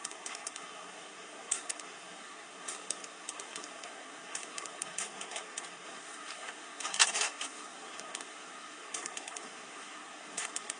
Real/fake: fake